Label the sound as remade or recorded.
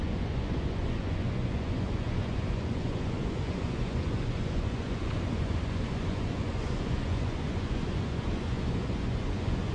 remade